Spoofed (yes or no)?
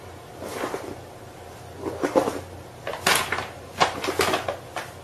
no